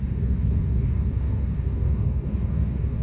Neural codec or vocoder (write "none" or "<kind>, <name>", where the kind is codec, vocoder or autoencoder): codec, DAC